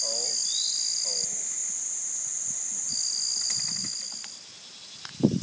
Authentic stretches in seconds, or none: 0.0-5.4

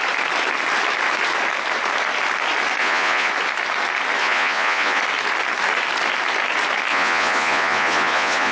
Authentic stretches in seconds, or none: 0.0-2.8; 3.3-4.2; 5.0-6.9

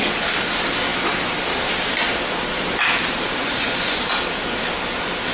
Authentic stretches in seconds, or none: 0.0-3.4; 4.0-5.3